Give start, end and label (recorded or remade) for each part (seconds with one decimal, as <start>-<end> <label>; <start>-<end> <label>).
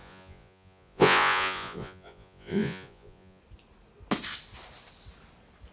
0.0-3.4 remade; 3.4-5.7 recorded